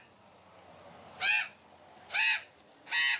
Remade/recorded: recorded